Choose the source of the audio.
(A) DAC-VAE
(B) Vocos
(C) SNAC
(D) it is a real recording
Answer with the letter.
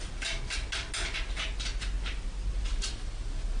D